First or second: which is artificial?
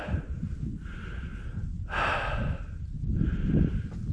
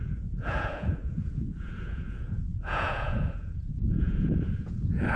second